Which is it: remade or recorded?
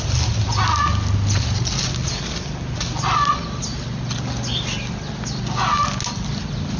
recorded